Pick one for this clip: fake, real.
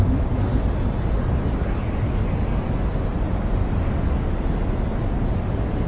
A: real